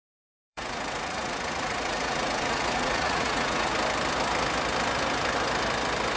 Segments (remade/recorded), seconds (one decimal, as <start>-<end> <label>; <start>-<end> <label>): 0.0-3.7 remade; 3.7-6.2 recorded